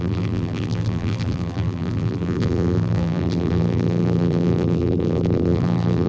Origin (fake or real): fake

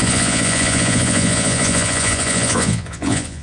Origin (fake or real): fake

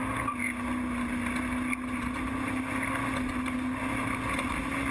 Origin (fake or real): real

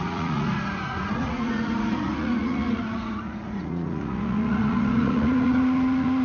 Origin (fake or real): fake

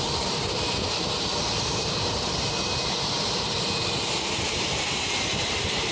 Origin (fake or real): fake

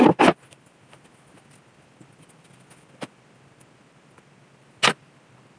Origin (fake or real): real